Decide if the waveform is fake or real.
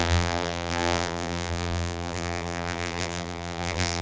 fake